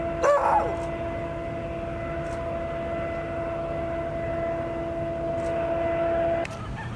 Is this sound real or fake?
real